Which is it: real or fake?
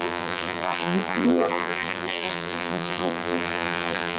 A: fake